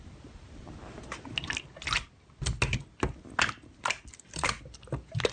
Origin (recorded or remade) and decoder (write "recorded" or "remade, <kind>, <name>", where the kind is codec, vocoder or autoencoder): recorded